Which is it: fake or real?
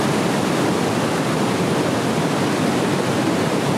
real